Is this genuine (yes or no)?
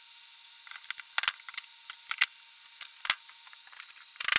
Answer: yes